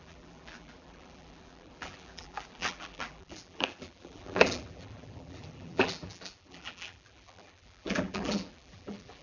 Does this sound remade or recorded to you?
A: remade